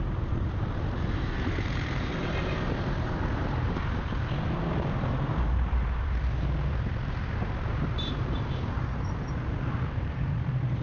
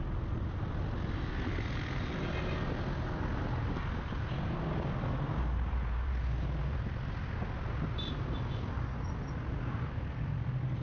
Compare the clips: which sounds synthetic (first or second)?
first